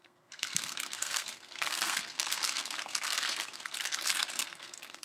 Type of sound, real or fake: fake